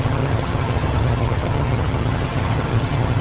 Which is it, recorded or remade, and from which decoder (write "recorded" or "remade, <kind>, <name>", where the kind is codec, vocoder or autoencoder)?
remade, vocoder, HiFi-GAN